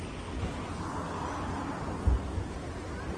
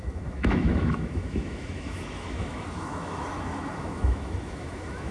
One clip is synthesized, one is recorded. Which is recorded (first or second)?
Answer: first